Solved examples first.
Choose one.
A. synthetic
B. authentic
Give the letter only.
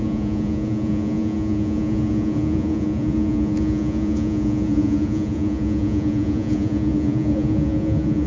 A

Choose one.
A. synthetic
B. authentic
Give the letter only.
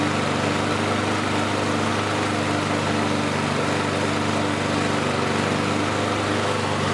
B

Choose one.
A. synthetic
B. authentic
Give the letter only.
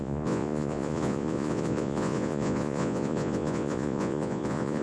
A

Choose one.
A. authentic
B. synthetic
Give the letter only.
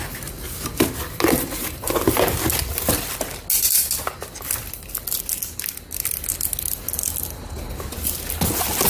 A